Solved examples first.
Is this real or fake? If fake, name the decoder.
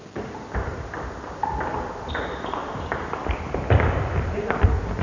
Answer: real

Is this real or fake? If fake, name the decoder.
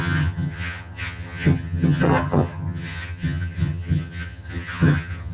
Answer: fake, vocoder, HiFi-GAN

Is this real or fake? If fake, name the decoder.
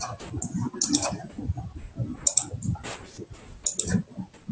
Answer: real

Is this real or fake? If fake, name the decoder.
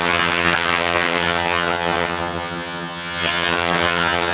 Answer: fake, vocoder, HiFi-GAN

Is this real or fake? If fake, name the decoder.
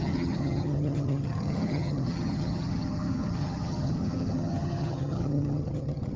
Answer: fake, vocoder, HiFi-GAN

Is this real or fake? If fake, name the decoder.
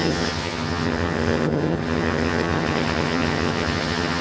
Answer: fake, vocoder, HiFi-GAN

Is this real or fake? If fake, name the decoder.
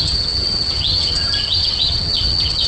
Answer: fake, vocoder, HiFi-GAN